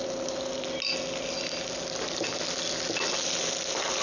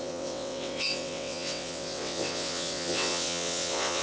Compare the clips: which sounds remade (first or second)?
second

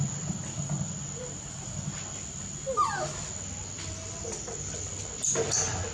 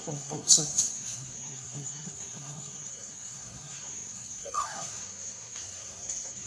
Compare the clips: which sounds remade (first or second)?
second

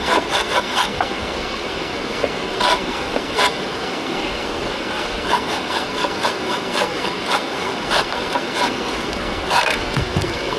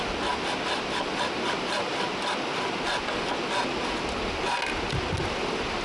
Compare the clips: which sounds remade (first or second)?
first